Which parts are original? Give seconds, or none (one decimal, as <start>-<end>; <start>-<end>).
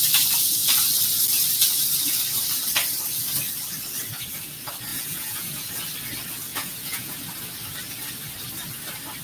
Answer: 0.0-4.9; 5.7-6.5; 7.2-9.2